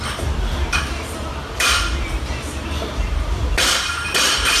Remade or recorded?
remade